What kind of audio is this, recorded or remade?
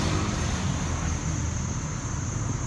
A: recorded